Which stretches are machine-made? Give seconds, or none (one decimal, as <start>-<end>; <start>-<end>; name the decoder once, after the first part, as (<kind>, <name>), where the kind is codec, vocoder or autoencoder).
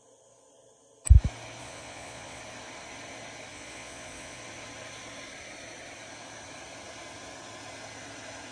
1.6-2.4 (vocoder, Vocos); 3.5-4.4